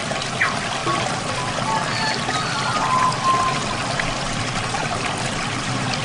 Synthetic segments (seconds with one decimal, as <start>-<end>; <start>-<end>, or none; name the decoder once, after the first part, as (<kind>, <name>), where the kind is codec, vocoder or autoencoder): none